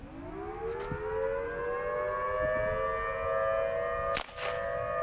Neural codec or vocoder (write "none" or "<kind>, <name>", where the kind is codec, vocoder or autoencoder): none